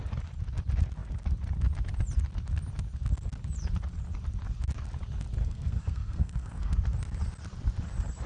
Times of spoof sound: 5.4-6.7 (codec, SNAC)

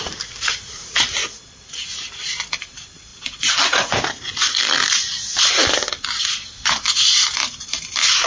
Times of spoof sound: none